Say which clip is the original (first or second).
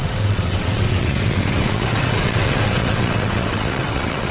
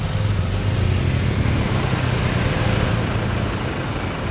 second